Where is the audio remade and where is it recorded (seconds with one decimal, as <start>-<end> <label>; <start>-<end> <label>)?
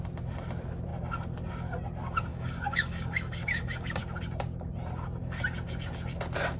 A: 0.0-2.3 recorded; 2.3-4.0 remade; 4.0-6.6 recorded